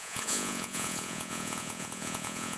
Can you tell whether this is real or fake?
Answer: fake